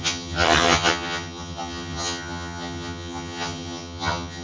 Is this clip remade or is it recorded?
remade